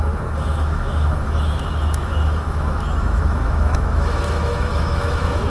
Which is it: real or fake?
fake